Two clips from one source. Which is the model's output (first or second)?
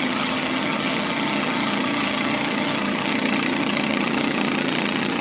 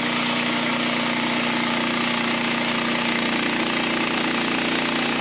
first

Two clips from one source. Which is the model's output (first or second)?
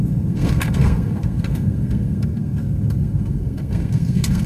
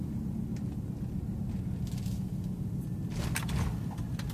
first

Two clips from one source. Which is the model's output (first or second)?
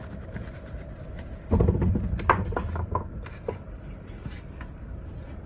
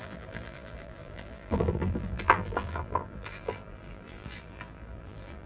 second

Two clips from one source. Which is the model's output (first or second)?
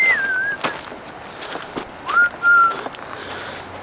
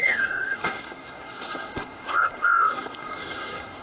second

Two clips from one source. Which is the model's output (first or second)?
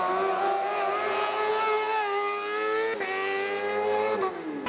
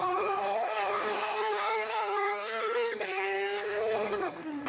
second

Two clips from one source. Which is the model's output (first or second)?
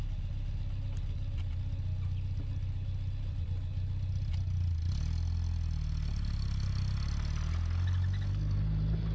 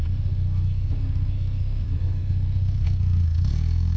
second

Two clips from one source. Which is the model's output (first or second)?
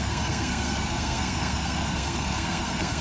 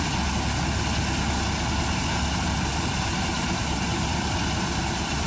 first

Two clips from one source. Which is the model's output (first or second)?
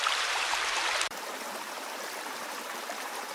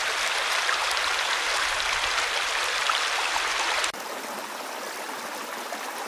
first